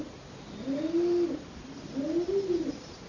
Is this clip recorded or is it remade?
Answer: recorded